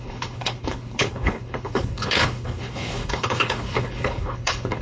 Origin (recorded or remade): remade